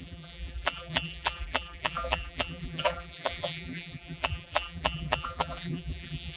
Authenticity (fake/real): fake